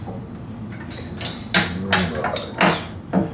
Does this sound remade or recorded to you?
recorded